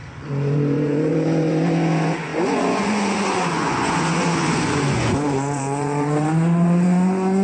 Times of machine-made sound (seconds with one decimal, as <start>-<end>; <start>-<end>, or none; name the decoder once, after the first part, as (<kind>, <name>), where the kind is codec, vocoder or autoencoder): 0.0-7.4 (vocoder, Vocos)